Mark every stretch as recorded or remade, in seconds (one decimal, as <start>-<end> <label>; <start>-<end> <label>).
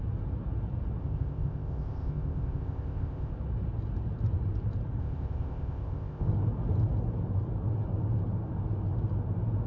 0.0-1.0 recorded; 1.0-3.3 remade; 3.3-5.0 recorded; 5.0-6.3 remade; 6.3-9.7 recorded